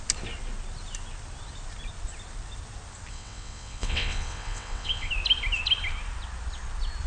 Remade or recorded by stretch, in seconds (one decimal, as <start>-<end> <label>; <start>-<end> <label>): 0.0-3.1 recorded; 3.1-5.1 remade; 5.1-7.1 recorded